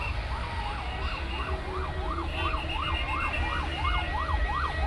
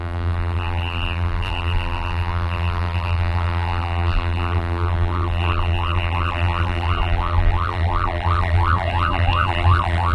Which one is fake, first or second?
second